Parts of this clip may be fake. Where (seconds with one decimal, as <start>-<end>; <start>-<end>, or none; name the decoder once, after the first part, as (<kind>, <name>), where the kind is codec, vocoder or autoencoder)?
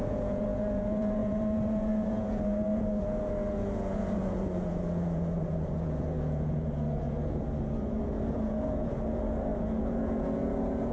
0.0-10.9 (vocoder, Vocos)